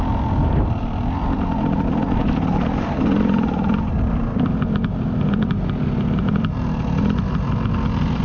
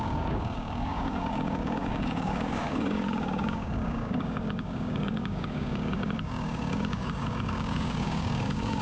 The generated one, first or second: second